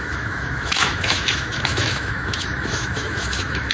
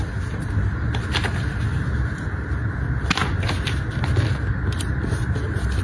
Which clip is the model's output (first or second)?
first